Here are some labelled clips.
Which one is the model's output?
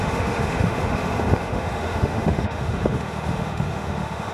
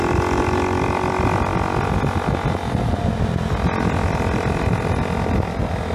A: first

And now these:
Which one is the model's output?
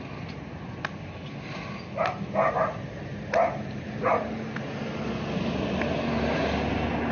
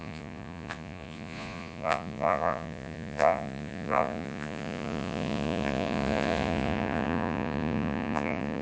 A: second